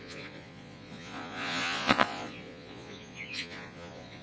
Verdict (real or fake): fake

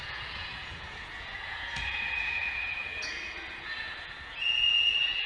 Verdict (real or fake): fake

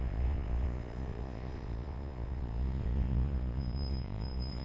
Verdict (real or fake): fake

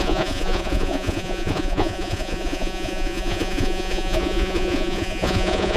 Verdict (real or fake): fake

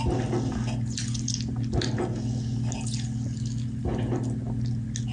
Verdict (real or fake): real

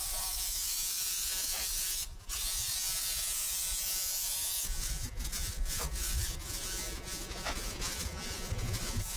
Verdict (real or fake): fake